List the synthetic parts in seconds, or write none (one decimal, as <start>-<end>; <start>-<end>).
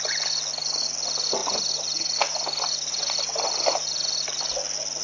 1.4-4.4